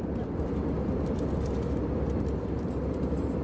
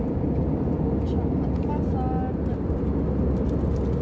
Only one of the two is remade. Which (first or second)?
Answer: first